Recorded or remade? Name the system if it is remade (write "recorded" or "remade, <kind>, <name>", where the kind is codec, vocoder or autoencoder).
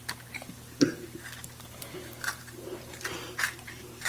remade, vocoder, BigVGAN v2